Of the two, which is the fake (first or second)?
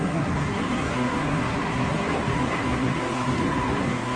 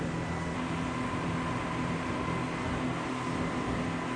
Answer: first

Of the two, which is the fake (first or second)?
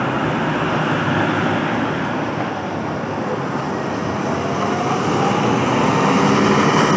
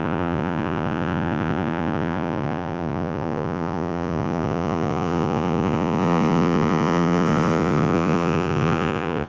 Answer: second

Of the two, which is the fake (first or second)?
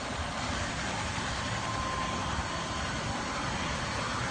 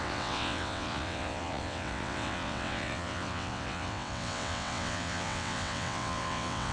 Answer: second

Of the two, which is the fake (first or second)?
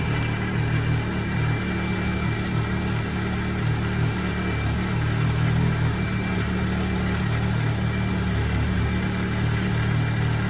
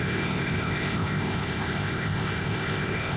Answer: second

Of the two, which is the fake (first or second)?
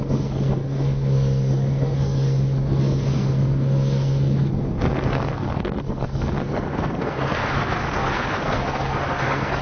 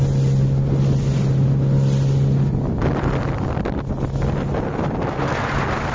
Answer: first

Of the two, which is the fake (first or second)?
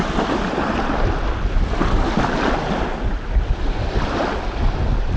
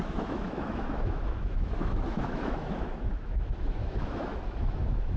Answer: second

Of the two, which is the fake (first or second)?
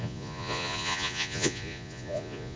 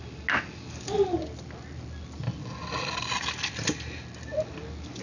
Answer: first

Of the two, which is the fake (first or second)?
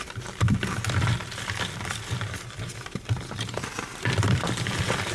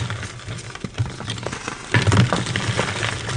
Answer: first